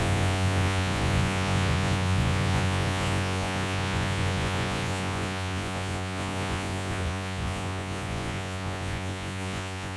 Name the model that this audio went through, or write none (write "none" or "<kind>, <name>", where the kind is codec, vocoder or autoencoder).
vocoder, Vocos